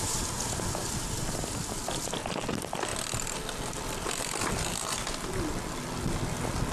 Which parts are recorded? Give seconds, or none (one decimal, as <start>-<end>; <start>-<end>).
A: 0.0-6.7